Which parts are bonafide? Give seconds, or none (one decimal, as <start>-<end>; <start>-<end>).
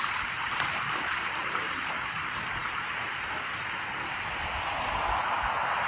0.0-5.9